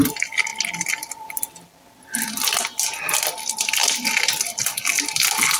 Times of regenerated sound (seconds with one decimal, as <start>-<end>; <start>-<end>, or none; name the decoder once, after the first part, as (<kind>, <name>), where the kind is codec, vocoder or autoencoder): none